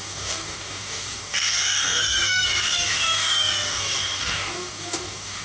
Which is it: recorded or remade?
remade